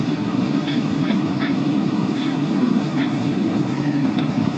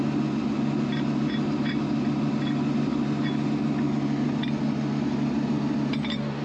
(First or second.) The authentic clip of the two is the second